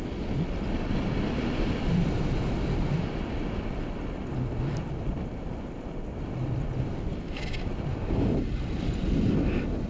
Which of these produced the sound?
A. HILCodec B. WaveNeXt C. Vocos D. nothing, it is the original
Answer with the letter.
D